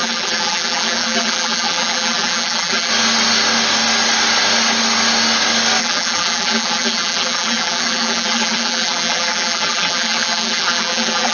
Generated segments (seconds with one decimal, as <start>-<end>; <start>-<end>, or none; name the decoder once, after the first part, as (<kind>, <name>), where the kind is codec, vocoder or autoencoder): 0.0-2.9 (vocoder, BigVGAN v2); 5.8-11.3